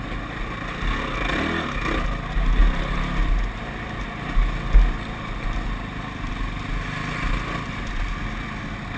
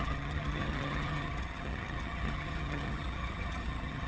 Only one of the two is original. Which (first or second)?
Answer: first